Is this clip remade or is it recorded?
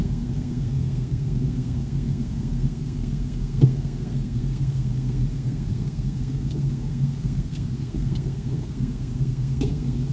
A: remade